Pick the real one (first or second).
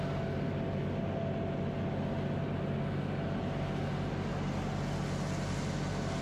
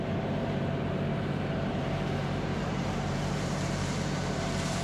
first